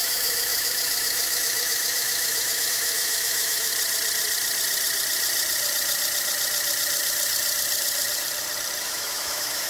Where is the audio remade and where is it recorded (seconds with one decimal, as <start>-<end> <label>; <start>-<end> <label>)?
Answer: 0.0-3.7 remade; 3.7-8.8 recorded; 8.8-9.7 remade